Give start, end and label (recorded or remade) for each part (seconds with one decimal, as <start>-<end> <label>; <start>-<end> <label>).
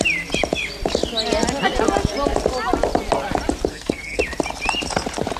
0.0-3.7 recorded; 3.7-4.2 remade; 4.2-5.4 recorded